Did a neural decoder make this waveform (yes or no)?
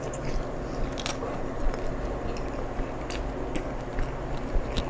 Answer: no